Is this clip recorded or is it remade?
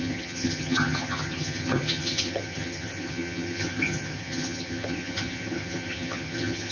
remade